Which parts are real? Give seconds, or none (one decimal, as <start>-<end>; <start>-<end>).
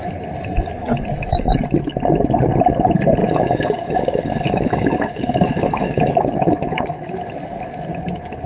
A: 0.0-1.1; 1.6-3.2; 7.1-8.5